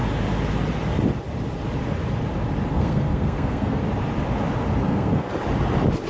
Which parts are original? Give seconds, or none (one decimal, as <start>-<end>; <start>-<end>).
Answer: 0.0-2.7; 3.8-4.8; 5.3-6.1